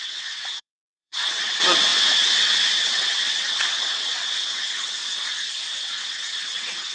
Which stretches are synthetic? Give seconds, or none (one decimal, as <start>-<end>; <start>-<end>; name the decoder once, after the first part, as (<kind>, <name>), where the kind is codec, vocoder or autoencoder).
0.0-5.0 (vocoder, WaveNeXt); 5.9-6.9

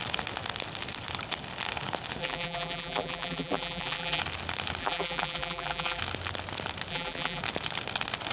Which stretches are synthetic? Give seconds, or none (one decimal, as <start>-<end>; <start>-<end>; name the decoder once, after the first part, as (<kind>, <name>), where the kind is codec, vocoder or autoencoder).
2.2-4.2 (vocoder, BigVGAN v2); 4.8-6.0; 6.9-7.4

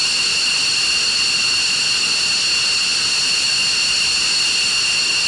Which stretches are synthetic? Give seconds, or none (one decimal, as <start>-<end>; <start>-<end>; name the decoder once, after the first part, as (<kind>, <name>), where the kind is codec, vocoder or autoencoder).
none